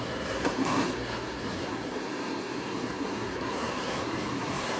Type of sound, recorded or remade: remade